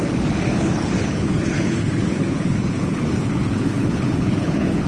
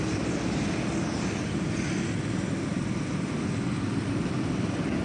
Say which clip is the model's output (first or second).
first